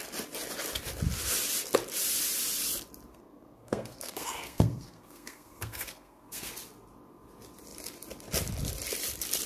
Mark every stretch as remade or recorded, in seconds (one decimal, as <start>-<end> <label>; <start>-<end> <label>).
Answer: 0.0-3.1 recorded; 3.1-6.5 remade; 6.5-9.5 recorded